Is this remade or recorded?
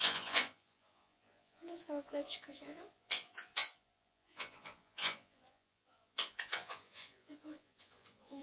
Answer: remade